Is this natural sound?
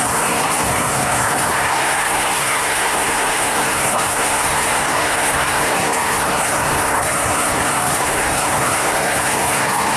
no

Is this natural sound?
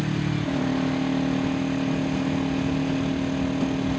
yes